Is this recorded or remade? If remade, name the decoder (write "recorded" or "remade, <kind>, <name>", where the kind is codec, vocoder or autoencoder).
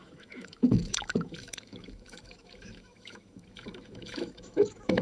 remade, autoencoder, DAC-VAE